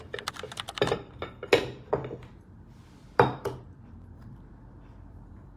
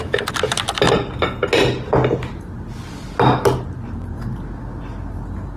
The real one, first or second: second